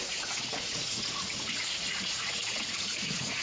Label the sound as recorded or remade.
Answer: remade